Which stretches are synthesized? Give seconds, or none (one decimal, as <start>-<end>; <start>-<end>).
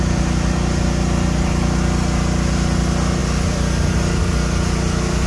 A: none